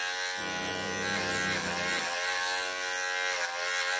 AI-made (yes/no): no